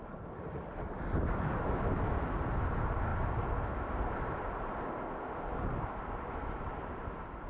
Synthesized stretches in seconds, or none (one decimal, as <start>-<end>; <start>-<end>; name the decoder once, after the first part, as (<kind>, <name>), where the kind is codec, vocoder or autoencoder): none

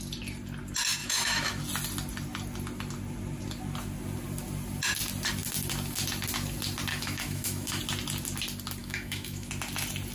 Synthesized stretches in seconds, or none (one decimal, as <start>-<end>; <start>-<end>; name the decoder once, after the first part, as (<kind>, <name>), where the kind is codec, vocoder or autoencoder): 1.0-1.6 (autoencoder, DAC-VAE); 6.9-7.8; 8.8-9.5

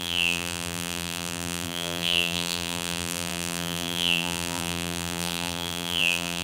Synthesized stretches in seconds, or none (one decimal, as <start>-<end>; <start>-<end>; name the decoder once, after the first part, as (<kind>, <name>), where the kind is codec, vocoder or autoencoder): 0.0-6.4 (vocoder, BigVGAN v2)

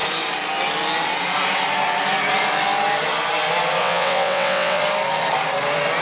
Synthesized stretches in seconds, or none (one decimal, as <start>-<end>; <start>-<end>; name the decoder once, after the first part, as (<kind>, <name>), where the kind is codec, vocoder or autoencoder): 3.8-4.8 (vocoder, WaveNeXt)

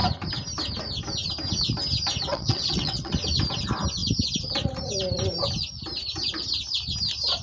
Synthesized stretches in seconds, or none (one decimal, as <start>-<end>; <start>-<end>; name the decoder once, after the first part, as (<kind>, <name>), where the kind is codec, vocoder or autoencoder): 2.3-3.1 (vocoder, WaveNeXt)